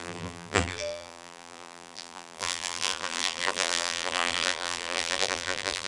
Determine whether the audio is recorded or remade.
remade